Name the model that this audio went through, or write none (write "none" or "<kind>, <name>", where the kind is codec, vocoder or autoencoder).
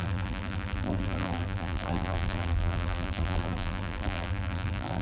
vocoder, BigVGAN v2